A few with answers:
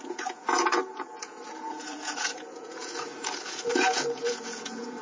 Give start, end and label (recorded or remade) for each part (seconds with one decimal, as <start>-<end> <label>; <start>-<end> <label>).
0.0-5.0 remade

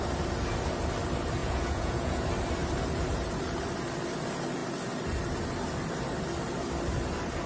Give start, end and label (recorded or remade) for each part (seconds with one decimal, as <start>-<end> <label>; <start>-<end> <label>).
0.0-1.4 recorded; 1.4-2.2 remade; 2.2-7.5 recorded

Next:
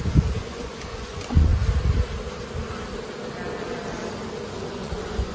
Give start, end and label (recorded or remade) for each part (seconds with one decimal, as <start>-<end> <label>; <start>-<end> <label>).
0.0-1.5 remade; 1.5-4.7 recorded; 4.7-5.3 remade